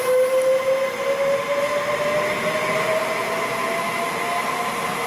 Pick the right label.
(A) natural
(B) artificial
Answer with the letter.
A